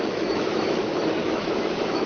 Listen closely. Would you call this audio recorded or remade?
remade